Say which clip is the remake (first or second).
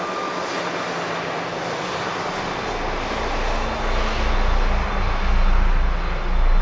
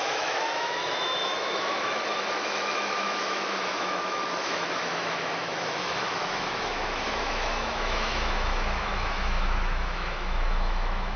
second